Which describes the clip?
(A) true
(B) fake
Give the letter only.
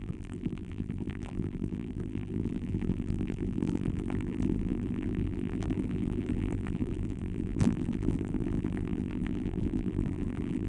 B